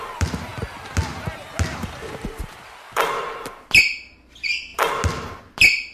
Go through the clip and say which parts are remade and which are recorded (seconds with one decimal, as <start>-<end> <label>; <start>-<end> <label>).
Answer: 0.0-5.9 recorded